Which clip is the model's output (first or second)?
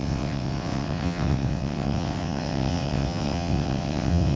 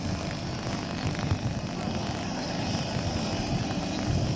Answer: first